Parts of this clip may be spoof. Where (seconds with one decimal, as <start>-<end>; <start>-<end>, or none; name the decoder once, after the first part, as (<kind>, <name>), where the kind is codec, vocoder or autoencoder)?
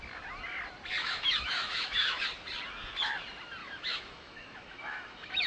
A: 1.0-2.2 (autoencoder, DAC-VAE); 3.6-5.5